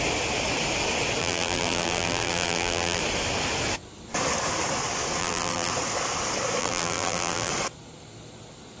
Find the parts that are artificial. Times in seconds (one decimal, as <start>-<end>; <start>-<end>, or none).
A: 1.2-3.0; 5.2-5.7; 6.6-7.5